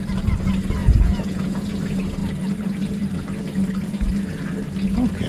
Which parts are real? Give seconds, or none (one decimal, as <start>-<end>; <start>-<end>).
0.0-0.8; 1.7-5.3